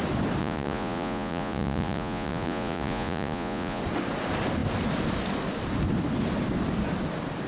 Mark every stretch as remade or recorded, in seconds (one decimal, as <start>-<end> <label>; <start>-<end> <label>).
0.0-0.4 recorded; 0.4-3.8 remade; 3.8-7.5 recorded